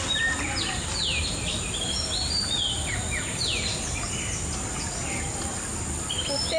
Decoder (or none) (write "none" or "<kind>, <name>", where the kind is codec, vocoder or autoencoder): none